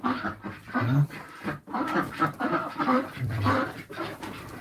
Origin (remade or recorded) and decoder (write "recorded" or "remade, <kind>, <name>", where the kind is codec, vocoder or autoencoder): remade, vocoder, BigVGAN v2